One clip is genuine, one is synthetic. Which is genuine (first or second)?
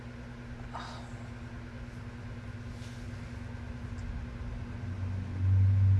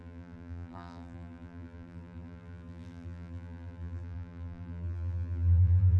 first